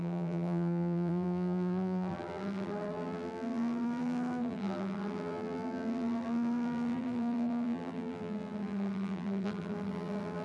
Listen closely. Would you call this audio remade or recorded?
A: remade